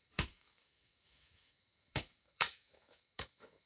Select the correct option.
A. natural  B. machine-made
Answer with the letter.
B